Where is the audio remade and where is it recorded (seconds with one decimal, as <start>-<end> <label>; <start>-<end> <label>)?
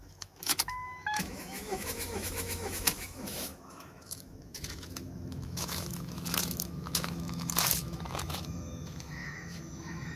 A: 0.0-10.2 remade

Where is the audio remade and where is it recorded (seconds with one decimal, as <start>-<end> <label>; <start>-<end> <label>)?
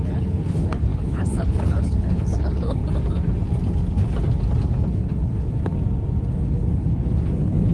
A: 0.0-2.8 remade; 2.8-4.9 recorded; 4.9-5.7 remade; 5.7-6.3 recorded; 6.3-7.7 remade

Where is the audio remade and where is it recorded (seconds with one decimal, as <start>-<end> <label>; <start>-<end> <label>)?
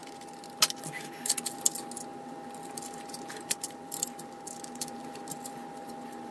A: 0.0-6.3 recorded